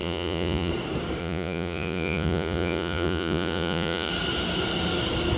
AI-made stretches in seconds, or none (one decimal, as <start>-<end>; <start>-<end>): 0.0-0.7; 1.2-4.1